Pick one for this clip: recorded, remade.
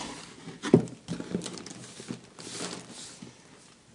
recorded